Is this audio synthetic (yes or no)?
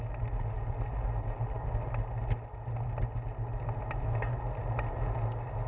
no